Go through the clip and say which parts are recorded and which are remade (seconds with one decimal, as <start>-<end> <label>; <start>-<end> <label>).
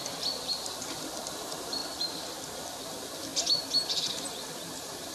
0.0-3.3 remade; 3.3-4.1 recorded; 4.1-5.1 remade